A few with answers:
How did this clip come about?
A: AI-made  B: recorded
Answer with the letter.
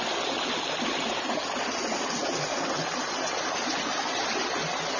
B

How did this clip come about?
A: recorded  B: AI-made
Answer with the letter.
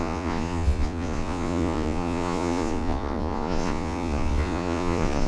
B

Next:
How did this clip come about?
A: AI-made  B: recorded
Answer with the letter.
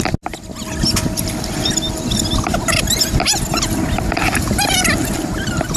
B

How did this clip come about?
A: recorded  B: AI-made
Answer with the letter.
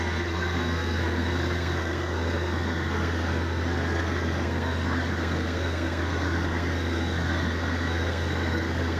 B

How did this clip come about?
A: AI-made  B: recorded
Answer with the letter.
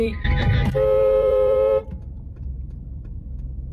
A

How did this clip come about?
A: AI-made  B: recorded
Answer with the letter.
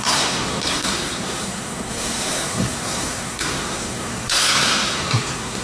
A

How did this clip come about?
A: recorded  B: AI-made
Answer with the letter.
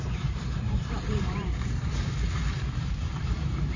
B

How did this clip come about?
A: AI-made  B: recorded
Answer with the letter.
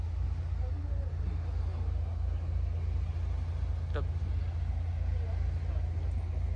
B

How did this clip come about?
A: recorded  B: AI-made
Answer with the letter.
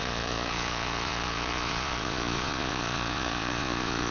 B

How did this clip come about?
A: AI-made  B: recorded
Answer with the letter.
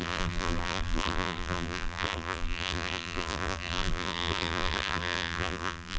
A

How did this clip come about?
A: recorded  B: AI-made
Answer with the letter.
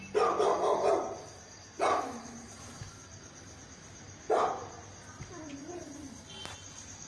A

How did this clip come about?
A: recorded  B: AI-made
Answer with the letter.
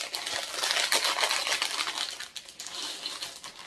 A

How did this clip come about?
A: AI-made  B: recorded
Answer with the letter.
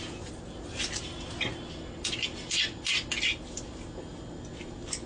B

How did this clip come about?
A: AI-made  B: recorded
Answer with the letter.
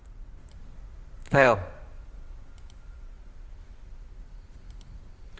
B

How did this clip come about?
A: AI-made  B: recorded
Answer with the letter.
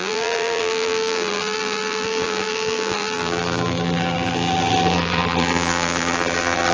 A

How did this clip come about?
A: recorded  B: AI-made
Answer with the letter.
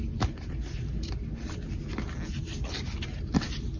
A